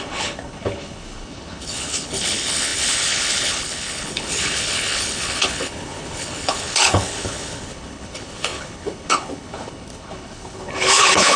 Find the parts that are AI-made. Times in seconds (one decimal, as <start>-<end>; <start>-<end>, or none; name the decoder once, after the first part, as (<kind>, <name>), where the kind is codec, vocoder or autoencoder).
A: 0.0-11.4 (codec, HILCodec)